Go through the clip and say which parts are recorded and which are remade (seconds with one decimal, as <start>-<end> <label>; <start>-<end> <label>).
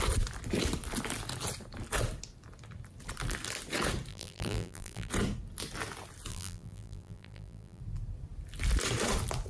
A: 0.0-4.1 recorded; 4.1-5.1 remade; 5.1-6.3 recorded; 6.3-7.8 remade; 7.8-9.5 recorded